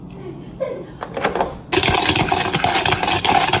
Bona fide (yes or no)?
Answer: yes